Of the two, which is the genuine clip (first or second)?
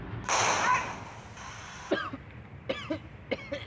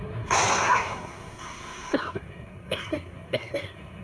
first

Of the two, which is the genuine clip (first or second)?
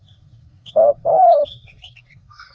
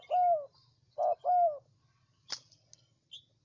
second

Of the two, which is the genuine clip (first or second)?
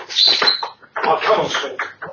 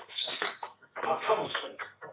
first